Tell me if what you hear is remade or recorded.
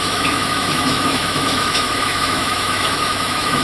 remade